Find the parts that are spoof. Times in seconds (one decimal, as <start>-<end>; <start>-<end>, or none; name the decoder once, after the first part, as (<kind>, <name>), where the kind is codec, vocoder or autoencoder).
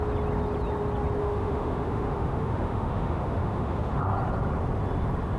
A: 1.2-4.0 (autoencoder, DAC-VAE)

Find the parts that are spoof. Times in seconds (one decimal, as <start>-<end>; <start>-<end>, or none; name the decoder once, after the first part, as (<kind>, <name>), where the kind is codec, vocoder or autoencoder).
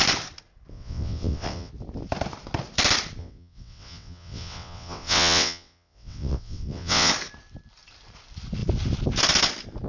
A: 0.7-1.7 (vocoder, WaveNeXt); 3.2-7.1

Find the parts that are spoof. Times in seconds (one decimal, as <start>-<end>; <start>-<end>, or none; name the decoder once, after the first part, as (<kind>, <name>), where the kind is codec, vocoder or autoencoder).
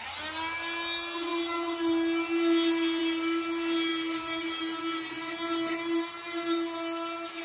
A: none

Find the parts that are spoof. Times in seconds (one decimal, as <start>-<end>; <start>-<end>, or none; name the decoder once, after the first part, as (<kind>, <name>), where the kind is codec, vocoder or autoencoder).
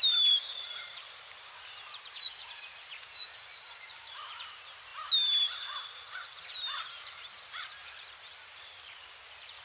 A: 0.0-9.6 (vocoder, BigVGAN v2)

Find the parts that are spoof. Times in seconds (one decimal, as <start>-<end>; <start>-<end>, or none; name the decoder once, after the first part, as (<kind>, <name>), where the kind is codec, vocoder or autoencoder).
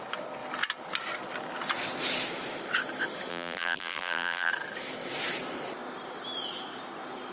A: 3.3-4.5 (vocoder, BigVGAN v2)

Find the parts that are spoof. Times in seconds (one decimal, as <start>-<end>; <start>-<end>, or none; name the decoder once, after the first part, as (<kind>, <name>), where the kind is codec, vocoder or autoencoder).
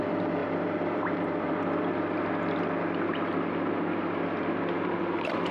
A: 0.4-3.7 (vocoder, BigVGAN v2)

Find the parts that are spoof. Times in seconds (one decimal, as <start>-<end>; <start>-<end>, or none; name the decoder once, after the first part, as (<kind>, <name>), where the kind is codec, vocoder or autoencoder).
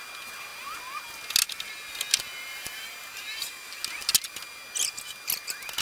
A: 2.6-3.9 (vocoder, BigVGAN v2)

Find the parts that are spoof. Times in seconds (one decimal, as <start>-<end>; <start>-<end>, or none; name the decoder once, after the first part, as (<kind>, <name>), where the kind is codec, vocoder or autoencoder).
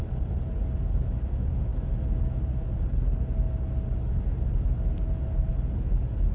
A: none